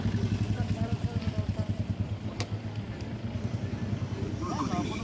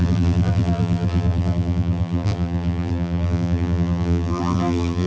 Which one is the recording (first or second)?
first